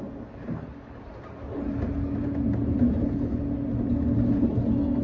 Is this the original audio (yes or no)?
yes